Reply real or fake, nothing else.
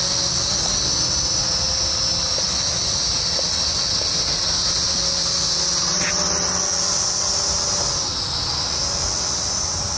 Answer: real